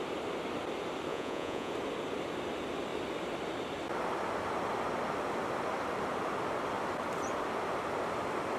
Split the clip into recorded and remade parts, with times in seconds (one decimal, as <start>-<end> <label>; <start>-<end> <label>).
0.0-1.1 recorded; 1.1-1.7 remade; 1.7-8.6 recorded